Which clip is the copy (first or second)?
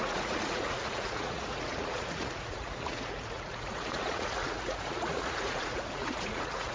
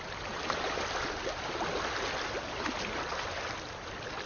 first